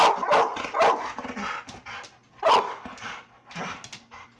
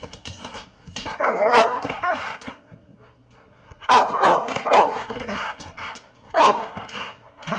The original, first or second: first